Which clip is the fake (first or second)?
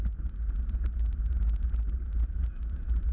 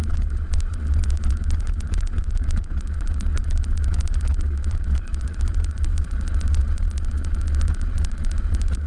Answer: second